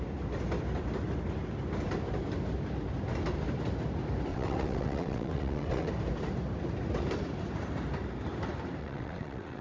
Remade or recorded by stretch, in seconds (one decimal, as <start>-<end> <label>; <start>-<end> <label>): 0.0-4.3 recorded; 4.3-5.9 remade; 5.9-8.8 recorded; 8.8-9.6 remade